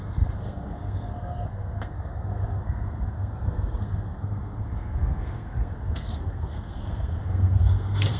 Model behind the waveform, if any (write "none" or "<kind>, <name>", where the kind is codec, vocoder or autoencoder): codec, SNAC